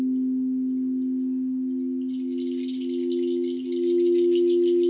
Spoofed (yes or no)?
no